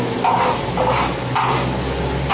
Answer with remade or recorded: recorded